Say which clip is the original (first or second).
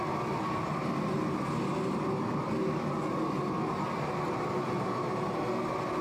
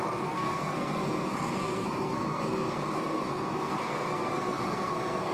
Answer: first